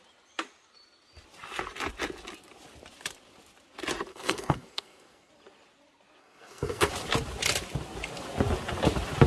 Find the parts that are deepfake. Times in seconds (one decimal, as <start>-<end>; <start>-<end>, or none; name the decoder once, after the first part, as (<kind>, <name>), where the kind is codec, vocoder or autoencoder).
4.1-5.3 (codec, SNAC); 6.2-6.9

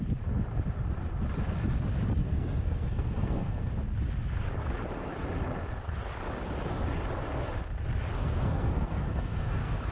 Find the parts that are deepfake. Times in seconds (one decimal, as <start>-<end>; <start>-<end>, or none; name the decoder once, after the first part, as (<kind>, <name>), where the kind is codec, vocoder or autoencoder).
2.2-3.7 (codec, SNAC); 8.2-9.9

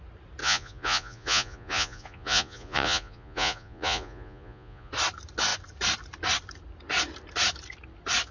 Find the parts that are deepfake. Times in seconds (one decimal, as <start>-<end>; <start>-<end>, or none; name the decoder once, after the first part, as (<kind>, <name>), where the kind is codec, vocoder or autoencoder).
0.4-4.9 (vocoder, Vocos)